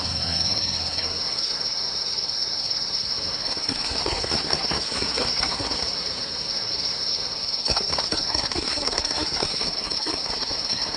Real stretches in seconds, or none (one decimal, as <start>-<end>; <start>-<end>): none